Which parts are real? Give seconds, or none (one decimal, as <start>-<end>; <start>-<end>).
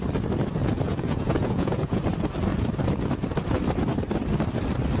0.0-0.6; 2.0-5.0